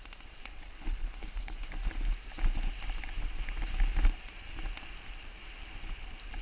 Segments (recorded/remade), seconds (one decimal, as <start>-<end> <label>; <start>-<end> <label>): 0.0-0.4 recorded; 0.4-1.7 remade; 1.7-6.4 recorded